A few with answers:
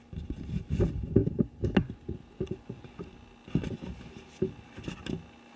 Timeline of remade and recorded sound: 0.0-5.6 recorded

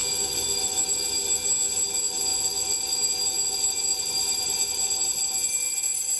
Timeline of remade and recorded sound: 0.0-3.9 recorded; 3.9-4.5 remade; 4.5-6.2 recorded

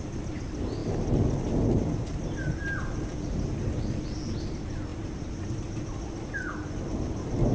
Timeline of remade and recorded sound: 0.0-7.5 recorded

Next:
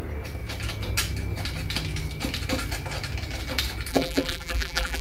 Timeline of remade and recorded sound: 0.0-3.9 recorded; 3.9-5.0 remade

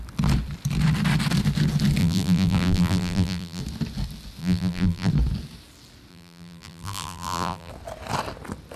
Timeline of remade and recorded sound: 0.0-2.0 recorded; 2.0-3.6 remade; 3.6-4.4 recorded; 4.4-5.1 remade; 5.1-6.1 recorded; 6.1-7.7 remade; 7.7-8.8 recorded

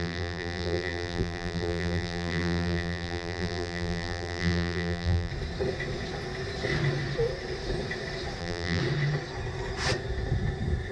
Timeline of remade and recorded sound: 0.0-5.3 remade; 5.3-8.4 recorded; 8.4-8.8 remade; 8.8-10.9 recorded